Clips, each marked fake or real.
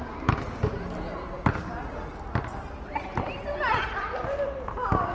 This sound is real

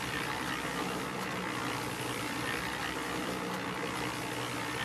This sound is fake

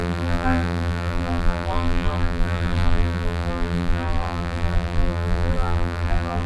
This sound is fake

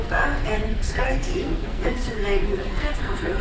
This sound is fake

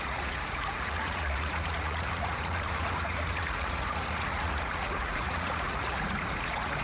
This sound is fake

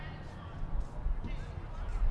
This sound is real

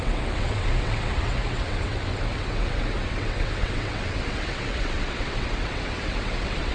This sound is fake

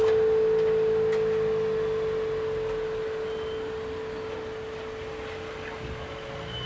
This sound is real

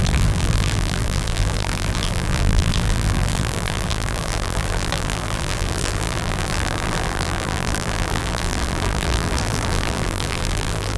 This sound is fake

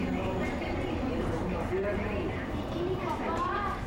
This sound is fake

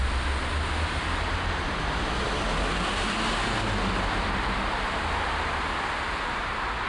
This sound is real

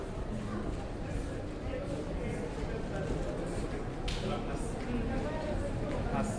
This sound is real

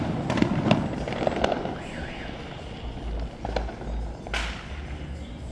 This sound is real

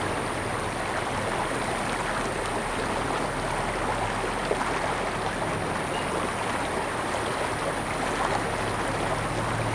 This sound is real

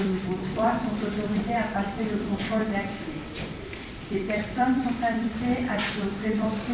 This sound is fake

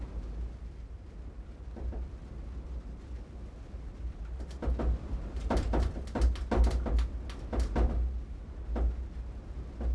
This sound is real